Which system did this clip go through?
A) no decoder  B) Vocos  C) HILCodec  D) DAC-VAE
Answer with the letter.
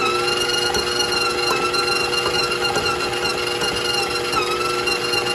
A